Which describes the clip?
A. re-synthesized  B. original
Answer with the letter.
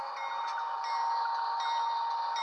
B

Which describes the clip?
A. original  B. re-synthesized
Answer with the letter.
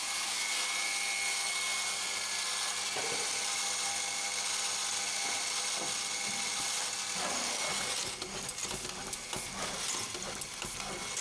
A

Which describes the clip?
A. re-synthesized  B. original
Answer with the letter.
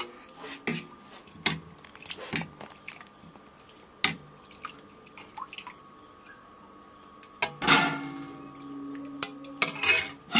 B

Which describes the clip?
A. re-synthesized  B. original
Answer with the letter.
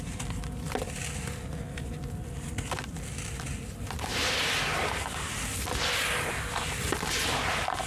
B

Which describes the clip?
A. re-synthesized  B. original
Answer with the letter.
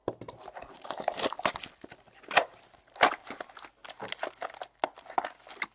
B